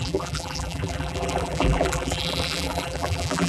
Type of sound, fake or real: fake